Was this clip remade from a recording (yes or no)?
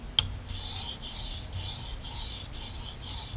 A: no